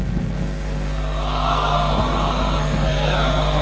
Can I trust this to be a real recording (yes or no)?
no